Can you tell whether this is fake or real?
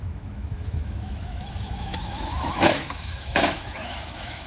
fake